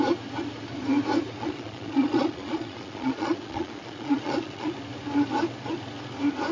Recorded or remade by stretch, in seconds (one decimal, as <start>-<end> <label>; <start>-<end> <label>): 0.0-1.4 recorded; 1.4-4.7 remade; 4.7-6.5 recorded